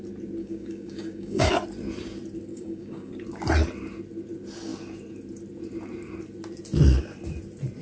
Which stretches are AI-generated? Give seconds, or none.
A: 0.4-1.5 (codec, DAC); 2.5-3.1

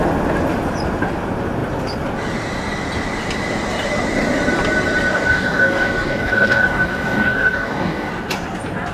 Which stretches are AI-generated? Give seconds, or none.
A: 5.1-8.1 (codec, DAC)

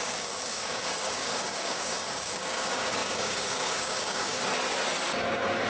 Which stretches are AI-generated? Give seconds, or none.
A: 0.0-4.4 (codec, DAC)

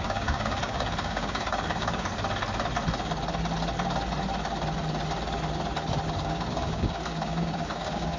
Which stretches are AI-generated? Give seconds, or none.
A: 0.0-2.1 (codec, DAC); 6.1-8.2